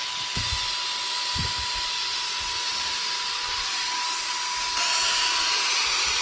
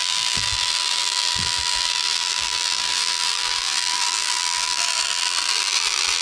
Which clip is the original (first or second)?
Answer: first